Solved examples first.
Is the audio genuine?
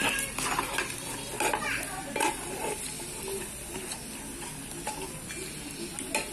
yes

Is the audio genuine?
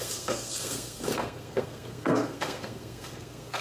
no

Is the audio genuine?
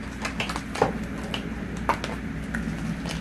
yes